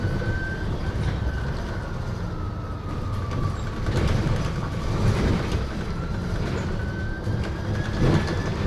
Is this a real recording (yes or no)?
yes